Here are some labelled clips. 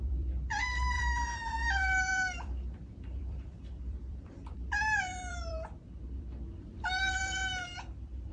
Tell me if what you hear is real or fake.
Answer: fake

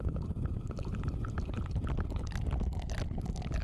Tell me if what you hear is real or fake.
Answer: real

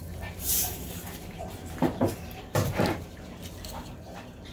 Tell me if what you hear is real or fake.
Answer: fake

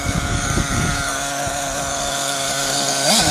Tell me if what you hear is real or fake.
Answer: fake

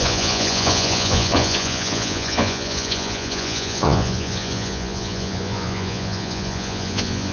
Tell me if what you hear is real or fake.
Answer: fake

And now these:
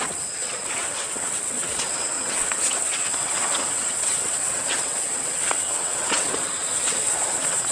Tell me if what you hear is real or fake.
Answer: fake